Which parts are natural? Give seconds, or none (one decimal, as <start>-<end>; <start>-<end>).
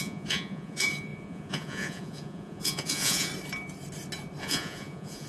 3.3-4.4